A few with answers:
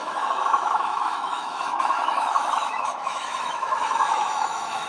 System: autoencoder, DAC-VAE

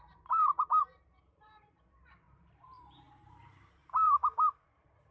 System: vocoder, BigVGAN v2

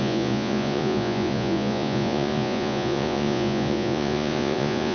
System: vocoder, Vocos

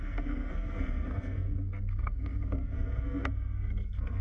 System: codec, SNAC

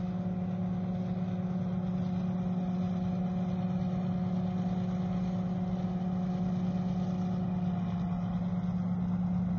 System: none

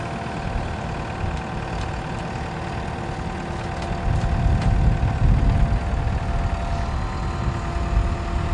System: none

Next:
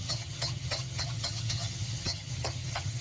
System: vocoder, HiFi-GAN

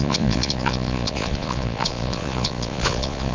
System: vocoder, Vocos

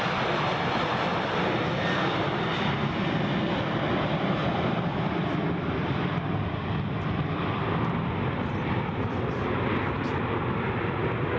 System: vocoder, BigVGAN v2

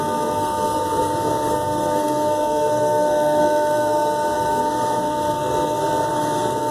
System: codec, SNAC